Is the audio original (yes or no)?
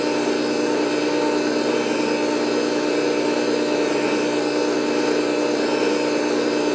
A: yes